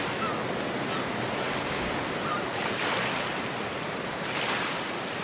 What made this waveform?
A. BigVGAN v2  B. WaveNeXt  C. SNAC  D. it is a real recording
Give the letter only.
D